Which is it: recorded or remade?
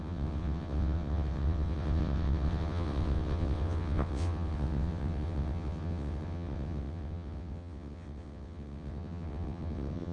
remade